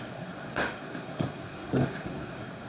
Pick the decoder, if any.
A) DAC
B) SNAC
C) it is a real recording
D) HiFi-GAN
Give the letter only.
B